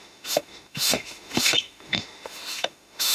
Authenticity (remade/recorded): remade